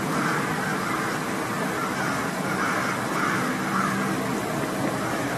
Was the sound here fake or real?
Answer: real